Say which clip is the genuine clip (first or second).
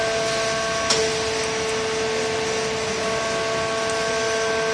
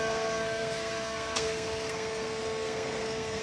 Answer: first